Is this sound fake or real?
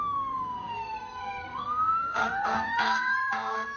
fake